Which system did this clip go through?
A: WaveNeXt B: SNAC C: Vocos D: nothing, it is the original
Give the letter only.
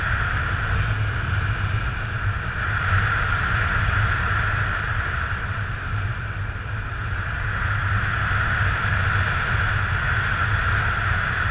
D